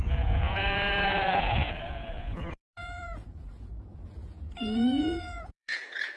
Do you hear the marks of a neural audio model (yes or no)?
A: yes